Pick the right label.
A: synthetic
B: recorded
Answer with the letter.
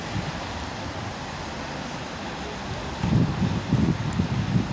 B